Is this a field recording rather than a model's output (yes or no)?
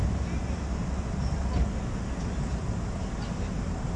yes